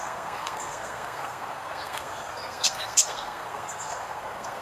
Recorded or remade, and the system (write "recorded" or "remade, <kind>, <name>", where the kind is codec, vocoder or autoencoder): remade, codec, SNAC